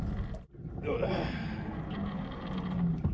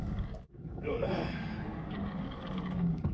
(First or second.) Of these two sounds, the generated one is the second